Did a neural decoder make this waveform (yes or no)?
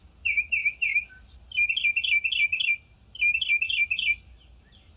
no